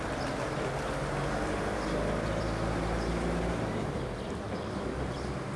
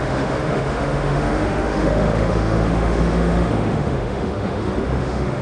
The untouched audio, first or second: first